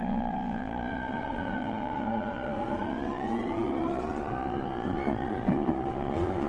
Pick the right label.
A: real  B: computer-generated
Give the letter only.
B